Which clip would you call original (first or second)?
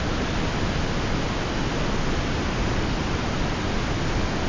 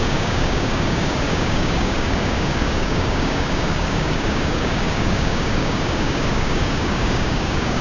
first